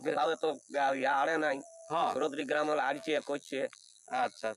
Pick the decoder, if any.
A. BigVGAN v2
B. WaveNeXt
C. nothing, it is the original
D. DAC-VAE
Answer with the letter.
A